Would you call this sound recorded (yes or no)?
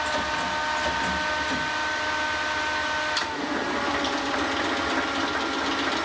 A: yes